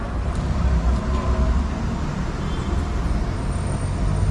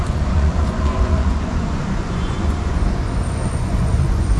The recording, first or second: first